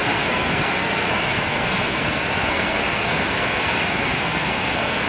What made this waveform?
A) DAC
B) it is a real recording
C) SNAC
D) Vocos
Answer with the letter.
C